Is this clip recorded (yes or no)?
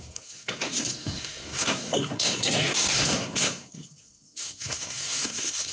no